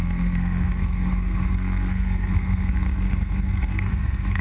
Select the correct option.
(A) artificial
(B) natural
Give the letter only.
A